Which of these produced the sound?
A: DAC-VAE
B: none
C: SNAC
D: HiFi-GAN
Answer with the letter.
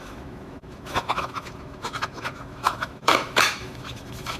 A